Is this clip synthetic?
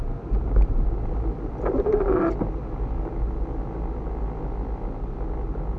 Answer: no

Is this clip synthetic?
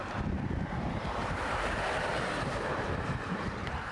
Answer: yes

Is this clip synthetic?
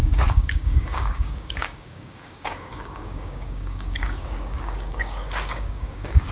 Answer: yes